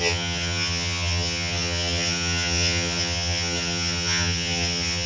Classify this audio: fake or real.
fake